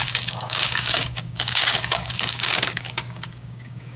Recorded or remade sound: remade